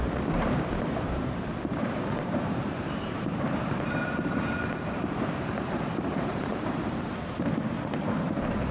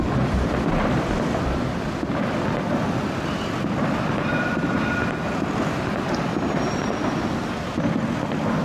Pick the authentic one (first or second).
second